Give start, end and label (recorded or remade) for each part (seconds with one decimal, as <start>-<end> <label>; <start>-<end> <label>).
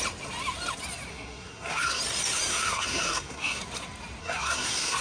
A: 0.0-1.1 recorded; 1.1-2.0 remade; 2.0-2.5 recorded; 2.5-3.6 remade; 3.6-4.2 recorded; 4.2-5.0 remade